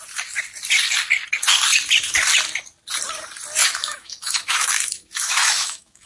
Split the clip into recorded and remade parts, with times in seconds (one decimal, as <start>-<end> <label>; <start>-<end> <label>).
0.0-3.6 recorded; 3.6-6.1 remade